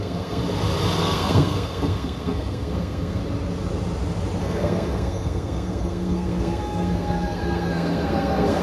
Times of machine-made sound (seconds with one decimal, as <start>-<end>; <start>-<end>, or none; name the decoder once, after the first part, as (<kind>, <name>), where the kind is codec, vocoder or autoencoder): 0.0-0.4 (codec, SNAC); 1.0-3.2; 4.4-8.6